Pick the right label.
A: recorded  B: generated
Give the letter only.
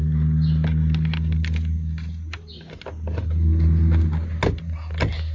A